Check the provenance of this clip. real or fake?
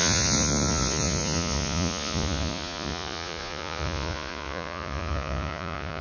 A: fake